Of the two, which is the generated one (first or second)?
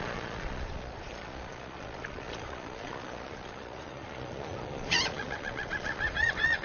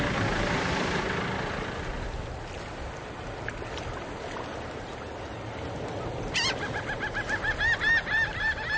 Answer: first